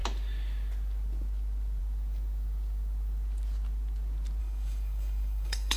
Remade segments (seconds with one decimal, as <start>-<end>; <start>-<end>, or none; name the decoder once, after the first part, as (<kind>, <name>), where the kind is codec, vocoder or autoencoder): 4.4-5.8 (codec, DAC)